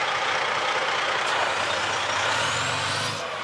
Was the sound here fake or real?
real